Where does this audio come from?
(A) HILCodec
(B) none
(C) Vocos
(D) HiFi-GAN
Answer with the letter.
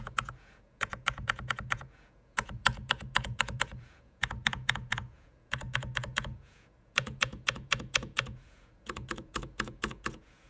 C